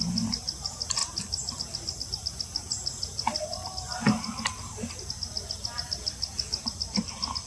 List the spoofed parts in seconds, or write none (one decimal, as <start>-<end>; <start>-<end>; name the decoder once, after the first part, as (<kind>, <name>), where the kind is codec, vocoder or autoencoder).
none